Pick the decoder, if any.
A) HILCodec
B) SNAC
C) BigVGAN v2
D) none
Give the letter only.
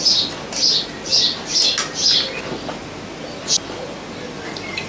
D